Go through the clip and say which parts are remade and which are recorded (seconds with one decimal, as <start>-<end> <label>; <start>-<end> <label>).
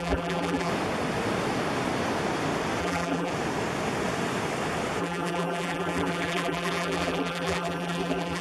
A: 0.0-0.7 remade; 0.7-2.8 recorded; 2.8-3.3 remade; 3.3-5.0 recorded; 5.0-8.4 remade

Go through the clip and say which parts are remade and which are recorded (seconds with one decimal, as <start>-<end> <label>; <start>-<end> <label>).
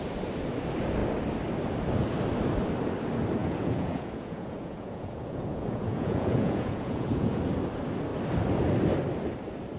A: 0.0-3.4 recorded; 3.4-7.4 remade; 7.4-9.8 recorded